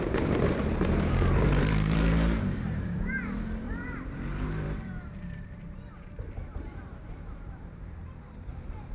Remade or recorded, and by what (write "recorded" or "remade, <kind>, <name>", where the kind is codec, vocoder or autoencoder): remade, vocoder, BigVGAN v2